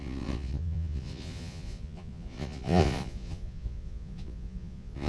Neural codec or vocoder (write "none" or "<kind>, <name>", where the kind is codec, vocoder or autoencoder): vocoder, Vocos